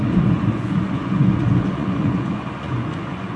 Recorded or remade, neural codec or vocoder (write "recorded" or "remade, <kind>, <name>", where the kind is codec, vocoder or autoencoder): remade, vocoder, Vocos